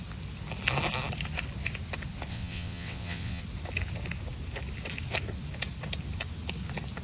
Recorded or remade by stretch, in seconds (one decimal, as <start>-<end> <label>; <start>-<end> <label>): 0.0-2.3 recorded; 2.3-3.4 remade; 3.4-7.0 recorded